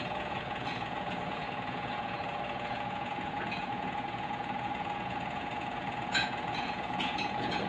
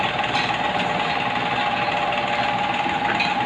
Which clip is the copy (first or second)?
first